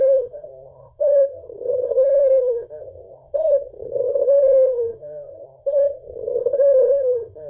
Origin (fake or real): fake